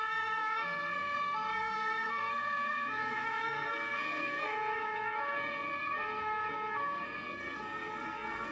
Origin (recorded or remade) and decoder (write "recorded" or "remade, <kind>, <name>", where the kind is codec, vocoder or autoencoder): remade, codec, SNAC